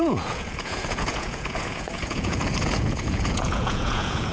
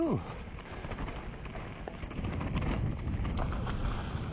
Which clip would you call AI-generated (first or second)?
first